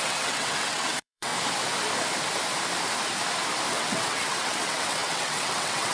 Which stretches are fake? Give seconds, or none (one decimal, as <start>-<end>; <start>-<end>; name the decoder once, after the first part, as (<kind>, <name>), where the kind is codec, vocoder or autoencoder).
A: 0.0-1.3 (vocoder, WaveNeXt); 3.7-5.9